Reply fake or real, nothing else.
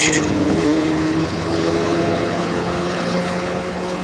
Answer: fake